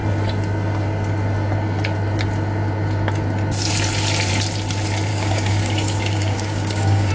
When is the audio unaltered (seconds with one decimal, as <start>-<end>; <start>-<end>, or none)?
0.0-5.1